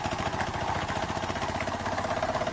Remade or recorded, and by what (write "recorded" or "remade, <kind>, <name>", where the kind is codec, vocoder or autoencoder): recorded